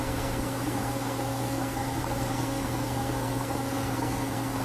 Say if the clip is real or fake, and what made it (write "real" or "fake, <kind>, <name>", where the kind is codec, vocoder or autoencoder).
fake, codec, SNAC